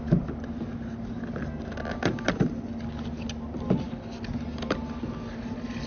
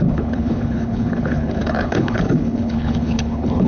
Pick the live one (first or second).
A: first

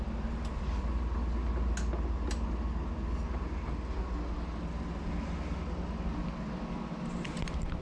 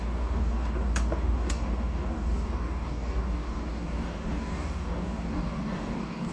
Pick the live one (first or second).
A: first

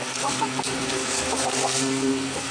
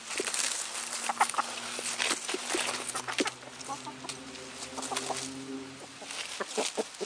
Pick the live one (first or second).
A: second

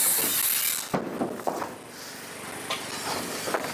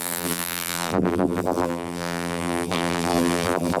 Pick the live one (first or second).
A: first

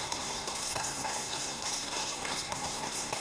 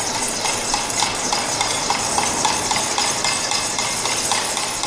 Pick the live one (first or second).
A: second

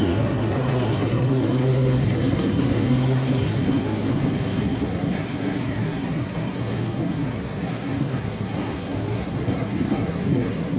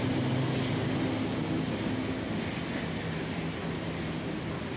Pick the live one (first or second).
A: second